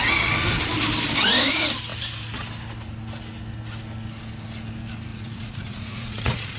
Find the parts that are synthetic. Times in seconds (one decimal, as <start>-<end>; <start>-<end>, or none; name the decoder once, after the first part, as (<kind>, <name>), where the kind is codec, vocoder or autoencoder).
5.1-6.6 (vocoder, Vocos)